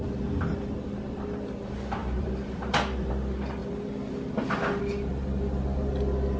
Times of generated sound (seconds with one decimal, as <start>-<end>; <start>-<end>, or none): 2.0-3.1